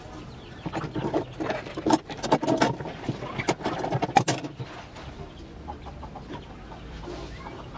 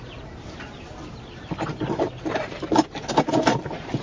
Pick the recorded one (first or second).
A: first